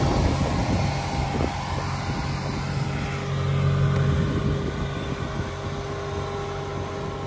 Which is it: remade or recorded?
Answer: recorded